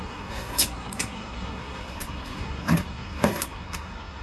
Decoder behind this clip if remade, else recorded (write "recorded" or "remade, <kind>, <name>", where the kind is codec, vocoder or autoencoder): remade, codec, SNAC